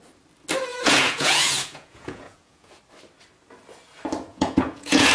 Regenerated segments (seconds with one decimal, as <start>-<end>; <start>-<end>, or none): 0.7-2.8; 4.3-5.1